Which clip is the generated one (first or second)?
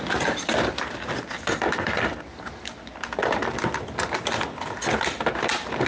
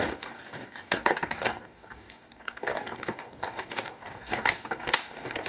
second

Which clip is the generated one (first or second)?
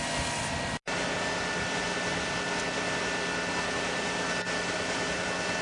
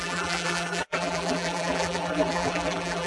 second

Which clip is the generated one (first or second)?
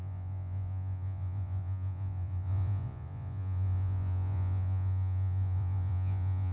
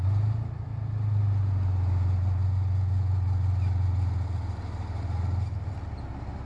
first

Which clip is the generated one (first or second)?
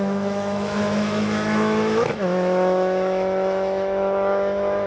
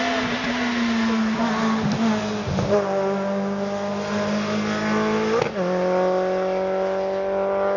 first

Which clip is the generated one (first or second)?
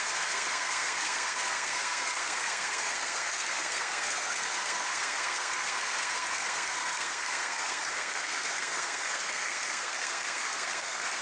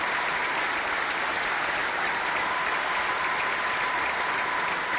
first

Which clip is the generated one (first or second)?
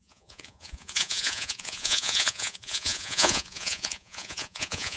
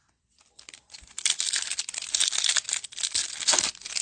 first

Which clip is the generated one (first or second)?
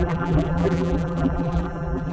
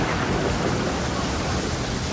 first